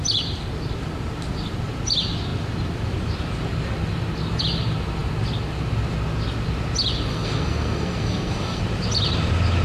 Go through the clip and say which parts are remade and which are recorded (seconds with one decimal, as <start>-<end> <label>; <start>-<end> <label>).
0.0-7.1 recorded; 7.1-8.6 remade; 8.6-9.6 recorded